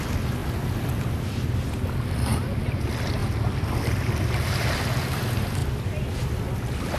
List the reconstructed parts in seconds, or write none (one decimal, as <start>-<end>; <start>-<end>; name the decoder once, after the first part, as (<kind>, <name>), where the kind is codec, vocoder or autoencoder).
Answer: none

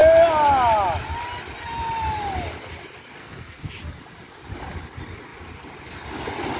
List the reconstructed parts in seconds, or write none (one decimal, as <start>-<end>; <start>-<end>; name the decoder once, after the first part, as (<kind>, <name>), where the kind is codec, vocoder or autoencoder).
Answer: 3.2-3.7 (codec, SNAC)

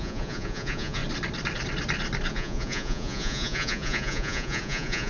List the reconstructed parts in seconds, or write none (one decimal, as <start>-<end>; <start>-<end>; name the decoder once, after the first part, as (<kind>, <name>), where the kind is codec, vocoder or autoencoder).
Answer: 0.0-1.0 (vocoder, Vocos); 2.3-5.1

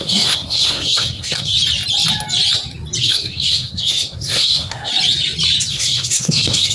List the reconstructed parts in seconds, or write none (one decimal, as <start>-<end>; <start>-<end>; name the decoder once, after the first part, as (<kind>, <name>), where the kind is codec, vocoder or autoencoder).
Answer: 0.0-1.5 (codec, SNAC); 3.0-4.9; 5.7-6.7

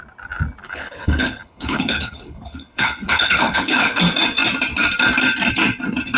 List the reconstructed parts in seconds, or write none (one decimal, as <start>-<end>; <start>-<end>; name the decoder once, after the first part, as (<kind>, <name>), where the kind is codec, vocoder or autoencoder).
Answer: 0.6-4.0 (codec, HILCodec)

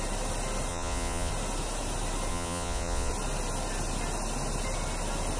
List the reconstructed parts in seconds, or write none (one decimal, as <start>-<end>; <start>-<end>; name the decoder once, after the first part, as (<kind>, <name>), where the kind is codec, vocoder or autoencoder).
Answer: 0.7-1.3 (vocoder, Vocos); 2.3-3.1

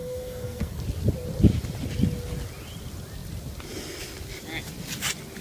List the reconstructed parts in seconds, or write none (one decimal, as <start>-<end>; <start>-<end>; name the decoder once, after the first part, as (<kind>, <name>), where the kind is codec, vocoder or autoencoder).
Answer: 0.0-0.8 (codec, SNAC)

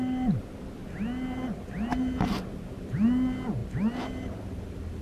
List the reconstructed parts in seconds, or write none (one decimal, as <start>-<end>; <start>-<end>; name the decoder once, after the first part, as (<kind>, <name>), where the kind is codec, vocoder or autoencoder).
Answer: none